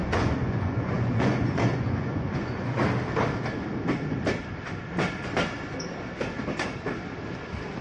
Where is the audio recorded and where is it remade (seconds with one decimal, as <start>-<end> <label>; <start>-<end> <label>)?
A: 0.0-2.8 remade; 2.8-7.8 recorded